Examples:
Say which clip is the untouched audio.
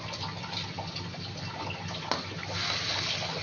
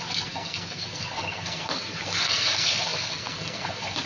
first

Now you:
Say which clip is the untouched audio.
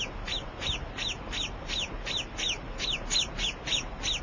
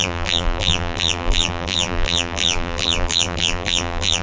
first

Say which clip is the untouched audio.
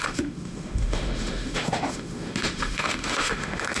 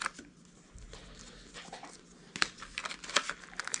second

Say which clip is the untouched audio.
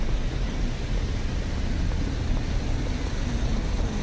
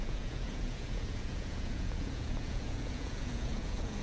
first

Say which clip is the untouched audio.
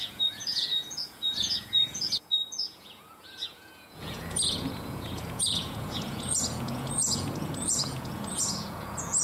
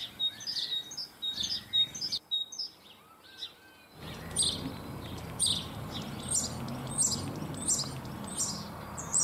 second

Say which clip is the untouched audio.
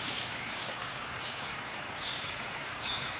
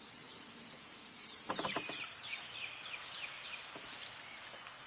second